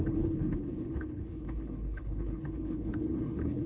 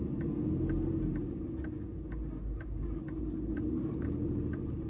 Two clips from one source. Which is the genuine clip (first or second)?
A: second